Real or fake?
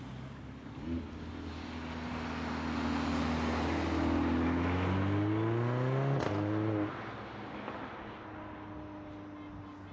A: real